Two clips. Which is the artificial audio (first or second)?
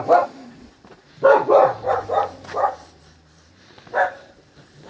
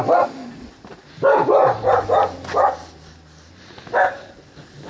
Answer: first